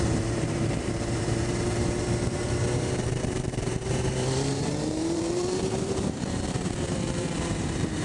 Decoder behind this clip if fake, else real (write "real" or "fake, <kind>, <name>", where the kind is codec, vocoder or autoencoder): fake, vocoder, BigVGAN v2